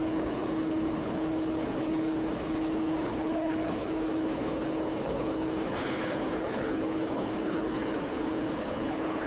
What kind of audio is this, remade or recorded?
remade